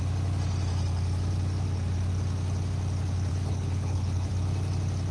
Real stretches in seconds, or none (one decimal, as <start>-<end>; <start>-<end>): 0.0-3.3; 4.3-5.1